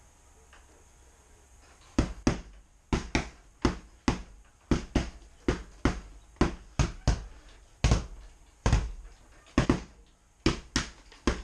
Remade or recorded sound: recorded